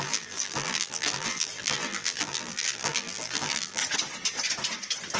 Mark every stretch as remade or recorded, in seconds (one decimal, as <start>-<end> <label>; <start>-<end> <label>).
0.0-3.8 remade; 3.8-5.2 recorded